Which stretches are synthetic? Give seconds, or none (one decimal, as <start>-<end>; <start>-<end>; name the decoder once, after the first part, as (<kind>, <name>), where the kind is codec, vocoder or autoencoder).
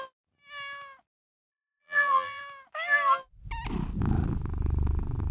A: 1.5-2.4 (vocoder, BigVGAN v2)